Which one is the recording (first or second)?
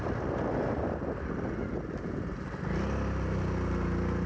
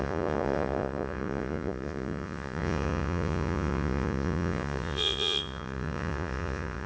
first